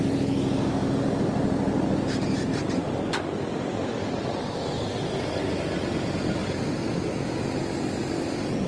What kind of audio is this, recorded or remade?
recorded